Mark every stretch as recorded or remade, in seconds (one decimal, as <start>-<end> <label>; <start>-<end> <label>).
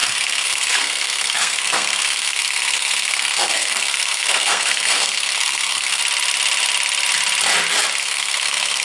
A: 0.0-6.0 remade; 6.0-8.0 recorded; 8.0-8.8 remade